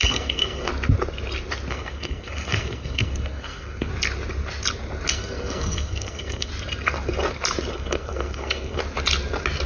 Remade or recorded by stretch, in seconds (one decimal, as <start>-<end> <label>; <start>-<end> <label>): 0.0-0.7 remade; 0.7-1.7 recorded; 1.7-3.9 remade; 3.9-5.1 recorded; 5.1-6.5 remade; 6.5-7.7 recorded; 7.7-8.8 remade; 8.8-9.7 recorded